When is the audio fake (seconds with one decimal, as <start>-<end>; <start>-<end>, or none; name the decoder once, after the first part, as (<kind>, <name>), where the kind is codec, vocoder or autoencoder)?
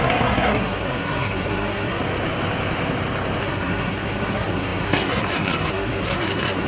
0.0-2.0 (codec, SNAC); 3.4-6.7